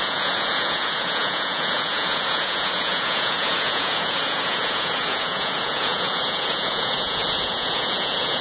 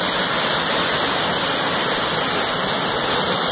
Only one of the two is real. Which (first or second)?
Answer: second